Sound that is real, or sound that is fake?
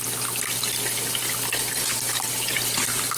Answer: real